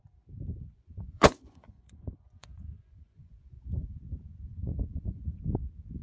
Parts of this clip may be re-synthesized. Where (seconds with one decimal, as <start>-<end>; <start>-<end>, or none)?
0.6-4.0; 4.5-5.4